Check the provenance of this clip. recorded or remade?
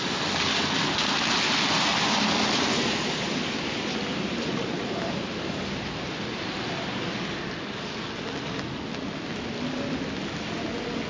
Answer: recorded